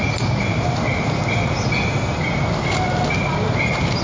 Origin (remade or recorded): recorded